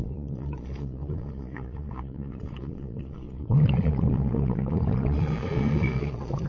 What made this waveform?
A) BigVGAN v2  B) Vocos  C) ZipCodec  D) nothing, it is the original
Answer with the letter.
B